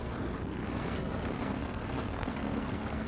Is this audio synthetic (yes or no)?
yes